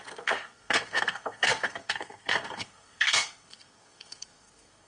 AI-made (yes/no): yes